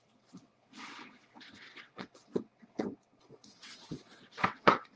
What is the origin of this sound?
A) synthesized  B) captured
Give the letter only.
A